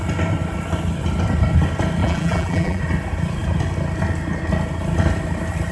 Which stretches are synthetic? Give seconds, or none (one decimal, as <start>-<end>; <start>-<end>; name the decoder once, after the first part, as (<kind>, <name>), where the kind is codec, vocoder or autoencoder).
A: 2.0-2.8 (vocoder, BigVGAN v2)